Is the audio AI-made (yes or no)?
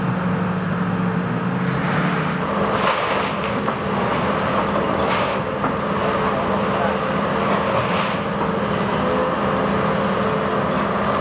no